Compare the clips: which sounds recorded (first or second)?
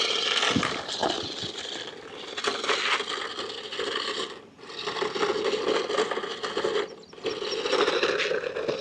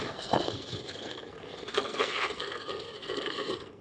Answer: first